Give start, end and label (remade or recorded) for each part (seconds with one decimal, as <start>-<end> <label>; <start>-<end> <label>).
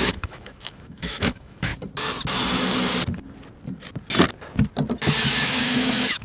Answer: 0.0-1.7 remade; 1.7-5.2 recorded; 5.2-6.2 remade